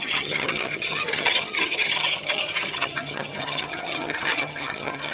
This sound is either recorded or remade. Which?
remade